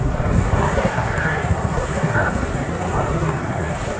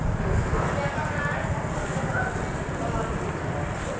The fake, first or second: first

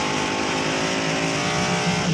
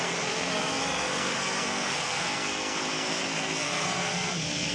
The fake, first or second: second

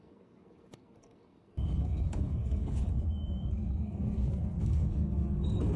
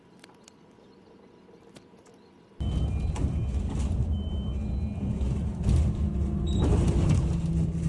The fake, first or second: first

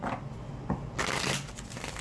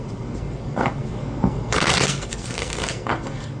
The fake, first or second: second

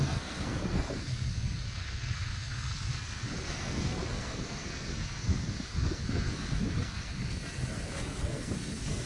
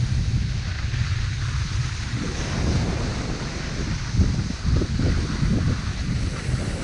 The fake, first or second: first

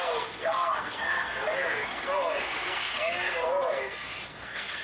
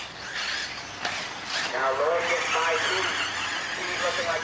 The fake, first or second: first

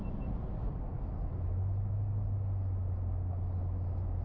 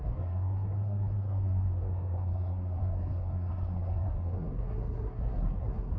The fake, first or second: second